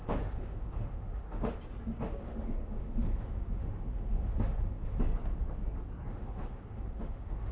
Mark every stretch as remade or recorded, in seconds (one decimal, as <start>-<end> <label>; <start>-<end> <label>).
0.0-1.6 remade; 1.6-2.2 recorded; 2.2-5.0 remade; 5.0-6.1 recorded; 6.1-7.5 remade